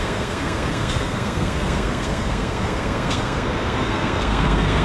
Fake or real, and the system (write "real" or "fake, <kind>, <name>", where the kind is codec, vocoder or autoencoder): fake, codec, SNAC